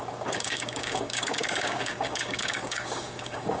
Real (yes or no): no